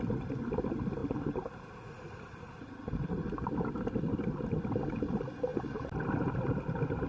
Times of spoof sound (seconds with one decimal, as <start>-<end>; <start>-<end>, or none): none